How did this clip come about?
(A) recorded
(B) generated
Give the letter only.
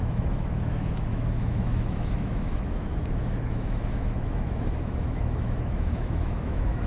B